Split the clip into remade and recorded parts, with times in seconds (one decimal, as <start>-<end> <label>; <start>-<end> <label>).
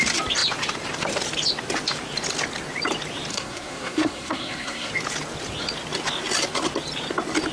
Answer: 0.0-3.3 recorded; 3.3-4.9 remade; 4.9-7.5 recorded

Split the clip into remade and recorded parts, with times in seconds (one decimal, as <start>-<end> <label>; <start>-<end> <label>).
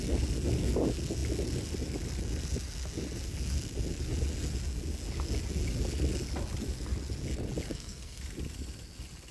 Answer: 0.0-7.7 recorded; 7.7-8.2 remade; 8.2-9.3 recorded